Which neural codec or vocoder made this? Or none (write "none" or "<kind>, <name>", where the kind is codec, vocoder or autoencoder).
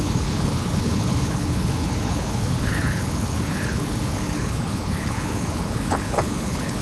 codec, HILCodec